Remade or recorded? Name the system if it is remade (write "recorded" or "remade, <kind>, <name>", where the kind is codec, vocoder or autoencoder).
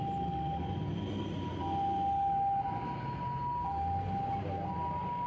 recorded